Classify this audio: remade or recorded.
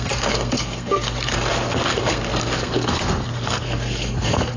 remade